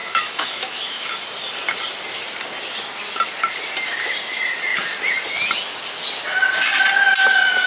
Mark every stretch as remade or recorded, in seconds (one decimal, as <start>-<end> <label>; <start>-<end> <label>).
0.0-1.1 remade; 1.1-7.7 recorded